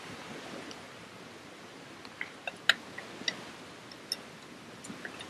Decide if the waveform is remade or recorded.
recorded